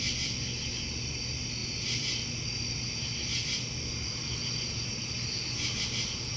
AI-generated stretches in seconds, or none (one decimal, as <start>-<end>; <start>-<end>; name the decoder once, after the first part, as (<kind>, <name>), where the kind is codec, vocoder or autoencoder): none